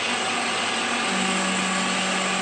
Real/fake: real